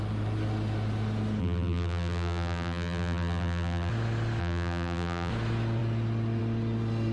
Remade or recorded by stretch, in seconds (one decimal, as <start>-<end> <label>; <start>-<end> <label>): 0.0-1.4 recorded; 1.4-3.9 remade; 3.9-4.4 recorded; 4.4-5.3 remade; 5.3-7.1 recorded